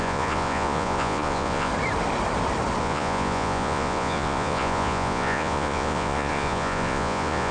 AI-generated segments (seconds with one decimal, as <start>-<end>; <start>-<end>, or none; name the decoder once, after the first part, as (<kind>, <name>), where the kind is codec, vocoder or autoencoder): 0.0-1.7 (vocoder, Vocos); 2.8-7.5

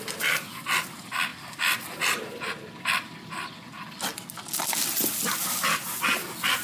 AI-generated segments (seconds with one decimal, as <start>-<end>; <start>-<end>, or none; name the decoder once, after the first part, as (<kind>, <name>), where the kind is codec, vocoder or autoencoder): none

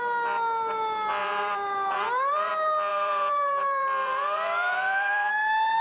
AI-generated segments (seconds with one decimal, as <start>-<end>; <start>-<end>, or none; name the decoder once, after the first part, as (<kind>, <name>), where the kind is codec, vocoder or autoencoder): 1.2-2.5 (vocoder, BigVGAN v2); 2.9-5.3

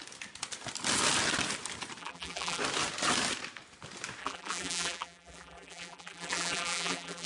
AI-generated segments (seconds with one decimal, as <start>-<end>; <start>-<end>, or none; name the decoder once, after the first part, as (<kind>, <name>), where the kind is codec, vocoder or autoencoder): 2.0-2.6 (vocoder, BigVGAN v2); 4.2-7.3

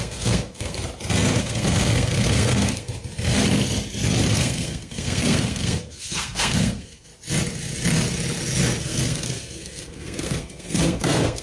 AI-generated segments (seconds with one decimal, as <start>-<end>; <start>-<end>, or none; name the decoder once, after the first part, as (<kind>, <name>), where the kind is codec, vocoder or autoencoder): 0.0-0.8 (codec, SNAC); 1.4-2.9; 4.3-7.1; 8.8-11.4

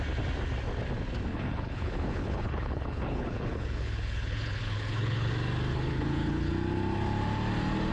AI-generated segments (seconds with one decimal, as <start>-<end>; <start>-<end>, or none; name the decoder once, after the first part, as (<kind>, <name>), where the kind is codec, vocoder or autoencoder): 1.3-5.3 (codec, HILCodec); 5.7-6.5